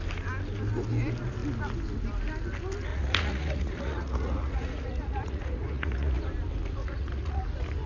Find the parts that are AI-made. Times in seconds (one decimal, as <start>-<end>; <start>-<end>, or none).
2.9-6.2; 6.8-7.4